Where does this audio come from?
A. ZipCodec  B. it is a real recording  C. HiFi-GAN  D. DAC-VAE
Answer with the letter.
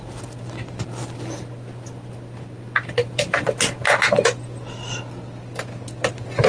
B